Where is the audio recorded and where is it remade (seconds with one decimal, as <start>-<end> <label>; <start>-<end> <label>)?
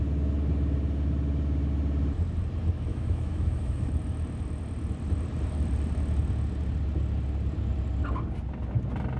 0.0-2.9 recorded; 2.9-3.9 remade; 3.9-9.2 recorded